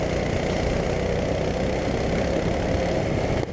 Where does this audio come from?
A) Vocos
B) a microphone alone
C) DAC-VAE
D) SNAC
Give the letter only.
B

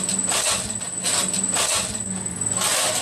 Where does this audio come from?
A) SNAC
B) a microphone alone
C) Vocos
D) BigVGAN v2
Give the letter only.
B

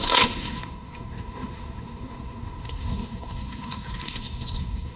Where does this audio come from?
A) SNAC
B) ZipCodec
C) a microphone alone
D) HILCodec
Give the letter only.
A